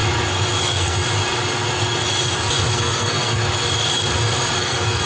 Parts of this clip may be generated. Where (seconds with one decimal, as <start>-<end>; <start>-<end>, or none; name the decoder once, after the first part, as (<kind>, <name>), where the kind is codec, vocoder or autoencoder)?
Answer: 0.6-1.0 (codec, SNAC); 2.7-3.4; 4.6-5.1